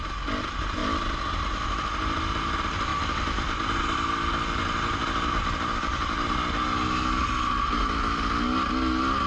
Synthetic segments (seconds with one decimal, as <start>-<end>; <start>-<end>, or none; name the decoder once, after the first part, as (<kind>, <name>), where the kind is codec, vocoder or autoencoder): none